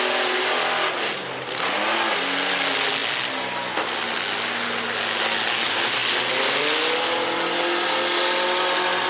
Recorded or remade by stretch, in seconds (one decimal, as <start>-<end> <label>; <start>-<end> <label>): 0.0-9.1 recorded